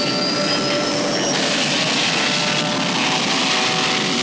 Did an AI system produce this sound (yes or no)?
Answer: no